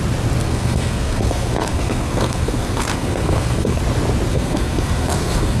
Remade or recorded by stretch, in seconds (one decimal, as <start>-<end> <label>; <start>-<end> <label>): 0.0-0.4 recorded; 0.4-3.8 remade; 3.8-4.3 recorded; 4.3-5.6 remade

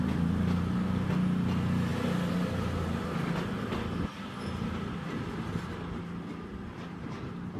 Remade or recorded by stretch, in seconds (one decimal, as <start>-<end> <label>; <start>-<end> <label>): 0.0-7.6 recorded

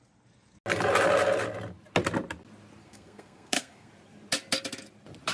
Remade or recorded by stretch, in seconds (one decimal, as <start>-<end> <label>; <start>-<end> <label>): 0.0-2.8 recorded; 2.8-3.9 remade; 3.9-5.3 recorded